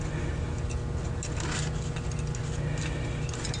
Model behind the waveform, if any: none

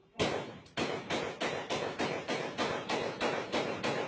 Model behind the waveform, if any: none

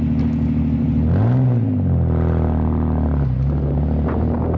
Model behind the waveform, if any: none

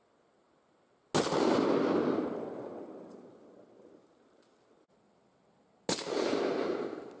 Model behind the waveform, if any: none